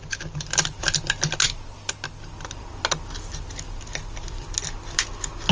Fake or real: real